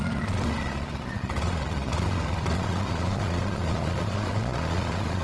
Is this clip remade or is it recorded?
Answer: remade